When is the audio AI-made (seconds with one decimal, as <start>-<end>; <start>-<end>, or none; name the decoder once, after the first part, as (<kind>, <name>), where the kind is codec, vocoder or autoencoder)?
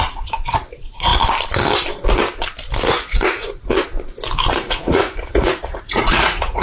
0.0-1.1 (vocoder, Vocos); 2.9-3.9; 4.5-6.6